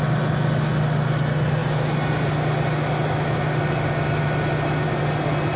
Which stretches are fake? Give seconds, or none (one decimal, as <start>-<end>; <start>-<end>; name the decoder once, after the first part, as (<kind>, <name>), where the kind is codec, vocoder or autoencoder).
none

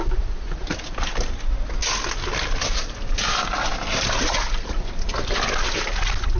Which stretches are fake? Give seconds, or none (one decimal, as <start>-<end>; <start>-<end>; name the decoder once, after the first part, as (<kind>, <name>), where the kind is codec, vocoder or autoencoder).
none

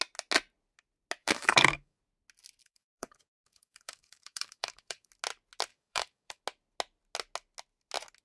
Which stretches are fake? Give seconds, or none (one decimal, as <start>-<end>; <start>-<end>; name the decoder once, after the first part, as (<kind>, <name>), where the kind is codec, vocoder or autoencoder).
1.2-2.0 (codec, DAC); 2.6-5.1; 5.7-6.4

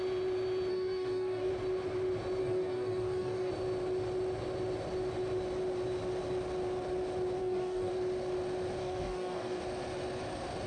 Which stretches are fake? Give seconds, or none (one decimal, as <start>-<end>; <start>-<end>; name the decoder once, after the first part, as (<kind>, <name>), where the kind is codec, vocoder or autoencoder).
0.7-1.5 (codec, DAC); 2.4-3.5; 7.4-7.9; 8.8-9.6

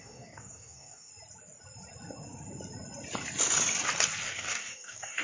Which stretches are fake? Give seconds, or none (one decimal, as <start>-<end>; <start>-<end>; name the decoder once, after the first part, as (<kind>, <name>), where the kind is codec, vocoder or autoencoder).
0.0-1.1 (codec, DAC); 4.2-5.2